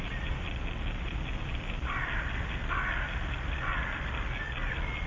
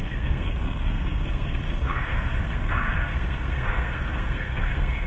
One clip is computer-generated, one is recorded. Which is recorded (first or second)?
first